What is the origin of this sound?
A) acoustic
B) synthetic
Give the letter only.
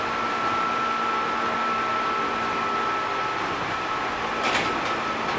A